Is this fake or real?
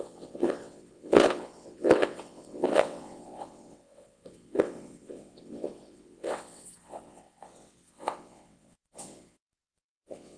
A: fake